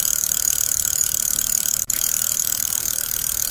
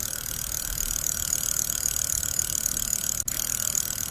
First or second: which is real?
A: second